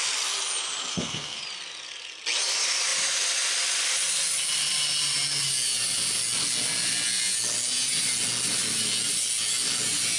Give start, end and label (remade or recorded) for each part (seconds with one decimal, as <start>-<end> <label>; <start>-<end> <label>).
0.0-0.9 recorded; 0.9-1.4 remade; 1.4-10.2 recorded